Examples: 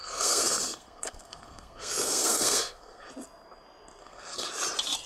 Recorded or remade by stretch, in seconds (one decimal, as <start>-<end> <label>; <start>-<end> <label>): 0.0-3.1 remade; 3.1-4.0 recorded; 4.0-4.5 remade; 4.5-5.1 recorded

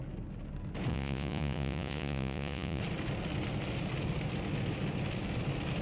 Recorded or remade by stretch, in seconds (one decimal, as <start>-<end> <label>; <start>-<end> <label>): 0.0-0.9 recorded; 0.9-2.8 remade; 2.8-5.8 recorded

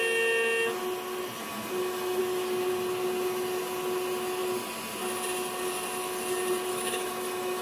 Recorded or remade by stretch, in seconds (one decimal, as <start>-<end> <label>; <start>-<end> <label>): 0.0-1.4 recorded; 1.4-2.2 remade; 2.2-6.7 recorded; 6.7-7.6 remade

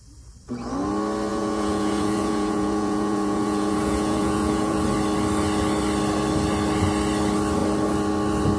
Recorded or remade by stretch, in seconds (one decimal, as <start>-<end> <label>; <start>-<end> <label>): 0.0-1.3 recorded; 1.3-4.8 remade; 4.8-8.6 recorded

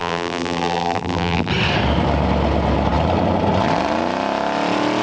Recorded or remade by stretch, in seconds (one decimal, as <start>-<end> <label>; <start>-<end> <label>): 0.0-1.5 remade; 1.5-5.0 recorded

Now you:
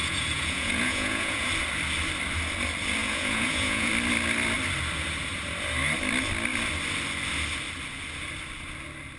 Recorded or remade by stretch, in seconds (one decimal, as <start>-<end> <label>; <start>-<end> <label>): 0.0-1.5 remade; 1.5-3.0 recorded; 3.0-3.9 remade; 3.9-9.2 recorded

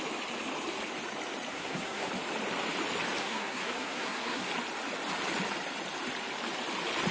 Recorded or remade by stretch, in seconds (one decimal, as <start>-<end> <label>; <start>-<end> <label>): 0.0-1.5 recorded; 1.5-2.1 remade; 2.1-3.2 recorded; 3.2-4.5 remade; 4.5-7.1 recorded